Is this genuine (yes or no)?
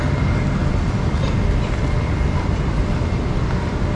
yes